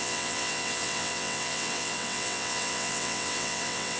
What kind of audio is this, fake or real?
fake